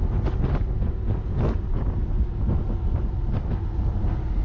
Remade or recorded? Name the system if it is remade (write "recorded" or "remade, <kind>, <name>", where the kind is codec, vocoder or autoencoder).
recorded